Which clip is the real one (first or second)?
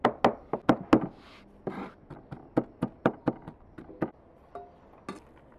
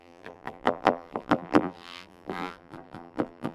first